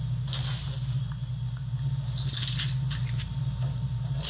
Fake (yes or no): no